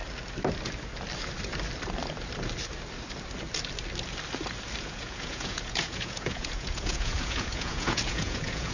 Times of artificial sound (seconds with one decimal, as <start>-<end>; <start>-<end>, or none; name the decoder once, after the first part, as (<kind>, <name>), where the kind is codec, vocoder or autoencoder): 4.8-8.7 (vocoder, Vocos)